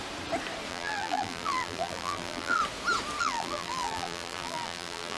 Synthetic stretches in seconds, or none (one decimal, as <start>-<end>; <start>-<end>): 0.7-2.6; 3.2-5.2

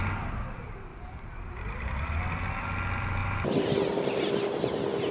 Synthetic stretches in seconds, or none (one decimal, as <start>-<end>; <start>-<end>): 0.9-2.2; 3.2-4.3

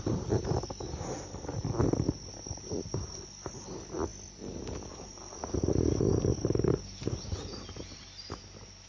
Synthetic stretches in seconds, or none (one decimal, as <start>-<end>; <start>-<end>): 0.0-4.1; 4.9-8.9

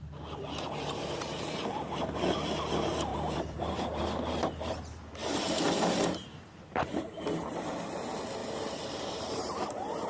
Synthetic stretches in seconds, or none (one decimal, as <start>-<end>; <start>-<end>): 3.1-4.0; 8.4-9.0

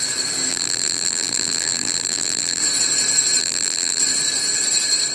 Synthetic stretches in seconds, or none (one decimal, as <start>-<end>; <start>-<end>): 0.5-2.6; 3.4-4.0

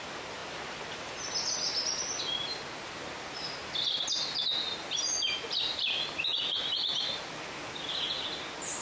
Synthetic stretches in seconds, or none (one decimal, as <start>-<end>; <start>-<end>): none

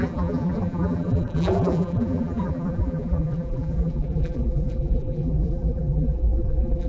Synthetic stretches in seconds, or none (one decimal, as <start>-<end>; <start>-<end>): 0.0-6.9

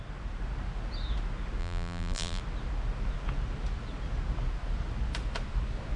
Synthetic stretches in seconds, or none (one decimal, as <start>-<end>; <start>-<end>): 1.6-2.4